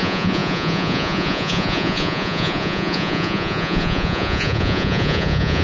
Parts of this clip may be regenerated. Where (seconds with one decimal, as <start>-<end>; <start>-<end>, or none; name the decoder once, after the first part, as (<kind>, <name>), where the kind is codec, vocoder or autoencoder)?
0.0-5.6 (vocoder, Vocos)